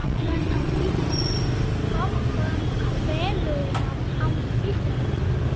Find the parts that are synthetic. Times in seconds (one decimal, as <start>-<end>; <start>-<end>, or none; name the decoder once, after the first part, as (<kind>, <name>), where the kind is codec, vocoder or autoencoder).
0.0-0.9 (vocoder, WaveNeXt)